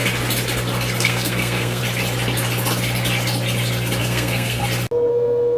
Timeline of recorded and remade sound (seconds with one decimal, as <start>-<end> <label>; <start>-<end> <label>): 0.0-1.0 recorded; 1.0-1.8 remade; 1.8-4.0 recorded; 4.0-4.6 remade; 4.6-5.1 recorded; 5.1-5.6 remade